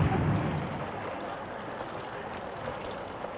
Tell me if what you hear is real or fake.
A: real